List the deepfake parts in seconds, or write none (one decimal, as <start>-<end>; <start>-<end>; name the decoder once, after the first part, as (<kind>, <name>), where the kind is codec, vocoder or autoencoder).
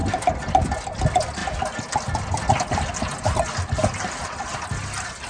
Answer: none